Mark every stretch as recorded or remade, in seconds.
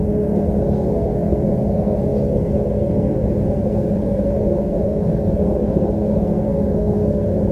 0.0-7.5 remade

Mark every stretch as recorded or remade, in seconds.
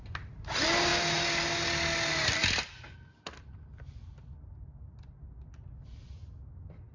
0.0-2.4 recorded; 2.4-2.9 remade; 2.9-6.9 recorded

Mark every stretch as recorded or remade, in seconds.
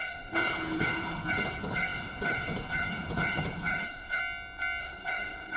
0.0-4.2 remade; 4.2-4.8 recorded; 4.8-5.6 remade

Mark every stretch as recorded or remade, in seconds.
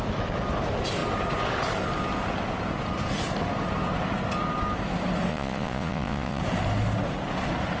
0.0-5.3 recorded; 5.3-6.4 remade; 6.4-7.8 recorded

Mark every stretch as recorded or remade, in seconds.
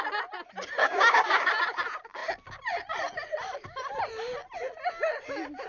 0.0-0.8 recorded; 0.8-1.5 remade; 1.5-5.7 recorded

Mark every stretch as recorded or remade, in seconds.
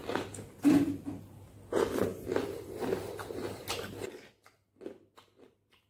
0.0-5.9 recorded